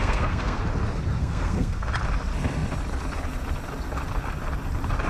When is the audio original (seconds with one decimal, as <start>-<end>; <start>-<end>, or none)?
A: 0.6-1.2; 1.9-5.1